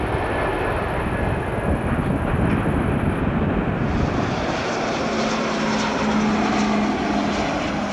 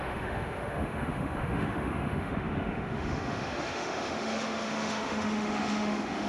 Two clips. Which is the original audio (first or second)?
first